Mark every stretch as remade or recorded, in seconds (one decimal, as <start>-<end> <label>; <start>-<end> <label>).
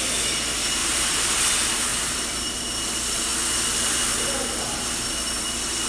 0.0-0.8 recorded; 0.8-1.4 remade; 1.4-1.9 recorded; 1.9-2.7 remade; 2.7-5.9 recorded